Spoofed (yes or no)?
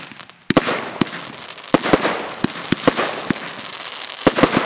no